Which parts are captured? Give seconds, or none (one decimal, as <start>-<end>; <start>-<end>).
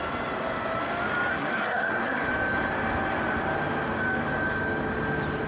0.0-1.3; 2.3-5.5